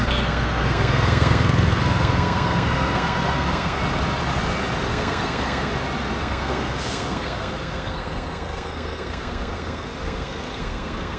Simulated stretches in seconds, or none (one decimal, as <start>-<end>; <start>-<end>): 0.0-3.8; 4.9-5.7; 6.2-11.2